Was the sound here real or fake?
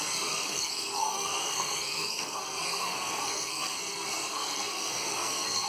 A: fake